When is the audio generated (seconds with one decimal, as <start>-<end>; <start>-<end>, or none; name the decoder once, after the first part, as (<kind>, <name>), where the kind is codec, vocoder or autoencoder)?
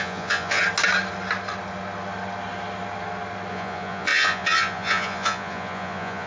0.0-0.6 (vocoder, Vocos); 3.5-6.3